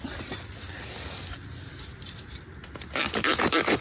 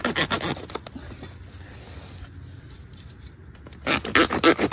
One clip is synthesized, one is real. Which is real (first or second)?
second